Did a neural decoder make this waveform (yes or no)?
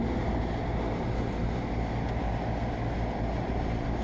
no